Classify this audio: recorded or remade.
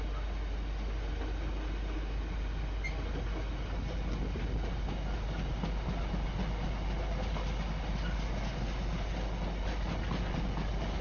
recorded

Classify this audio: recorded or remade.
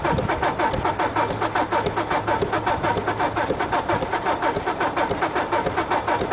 recorded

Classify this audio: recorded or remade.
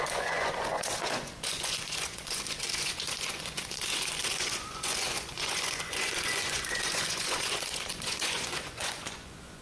remade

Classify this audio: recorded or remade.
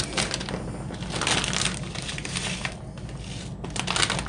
recorded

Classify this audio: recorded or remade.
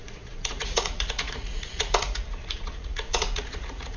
remade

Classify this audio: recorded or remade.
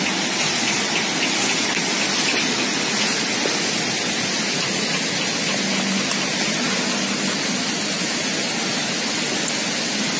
recorded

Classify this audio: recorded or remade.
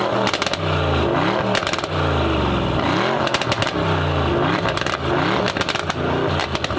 recorded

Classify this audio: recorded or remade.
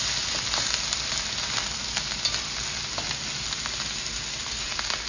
recorded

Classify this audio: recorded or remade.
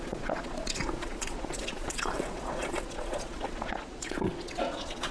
remade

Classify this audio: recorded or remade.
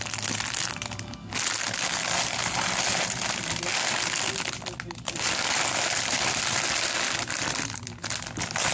recorded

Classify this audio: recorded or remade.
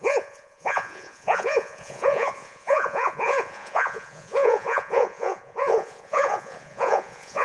remade